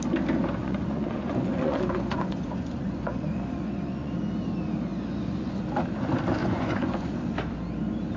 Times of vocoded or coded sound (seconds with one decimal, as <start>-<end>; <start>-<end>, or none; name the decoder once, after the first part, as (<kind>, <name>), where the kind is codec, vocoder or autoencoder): 0.6-4.1 (vocoder, Vocos); 4.9-5.6; 6.4-7.1